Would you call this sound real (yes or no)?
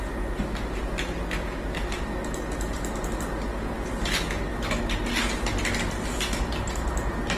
yes